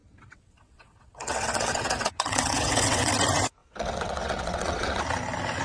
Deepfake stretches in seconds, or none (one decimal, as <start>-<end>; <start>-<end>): 0.0-3.1; 3.6-5.0

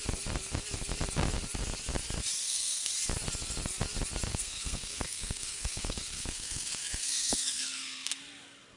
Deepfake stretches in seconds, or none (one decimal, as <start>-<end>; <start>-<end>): 2.4-2.9; 4.3-8.2